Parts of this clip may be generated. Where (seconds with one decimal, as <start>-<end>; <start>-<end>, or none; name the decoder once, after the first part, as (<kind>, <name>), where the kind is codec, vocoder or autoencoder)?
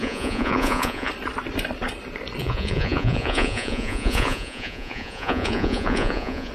0.0-1.1 (vocoder, Vocos); 2.4-6.5